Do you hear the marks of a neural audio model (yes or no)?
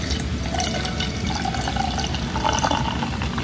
no